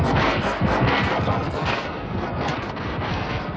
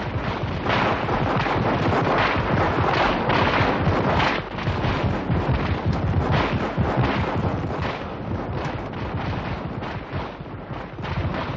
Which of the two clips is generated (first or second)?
first